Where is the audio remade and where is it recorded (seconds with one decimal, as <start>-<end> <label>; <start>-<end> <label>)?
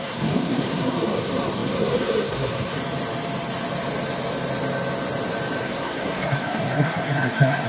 0.0-2.8 remade; 2.8-5.6 recorded; 5.6-7.7 remade